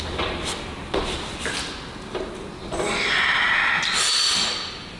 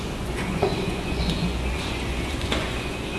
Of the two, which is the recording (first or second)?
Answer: first